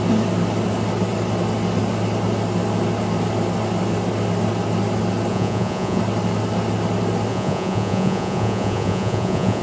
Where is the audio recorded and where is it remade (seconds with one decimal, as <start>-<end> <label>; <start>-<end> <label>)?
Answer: 0.0-5.3 recorded; 5.3-6.0 remade; 6.0-7.3 recorded; 7.3-9.6 remade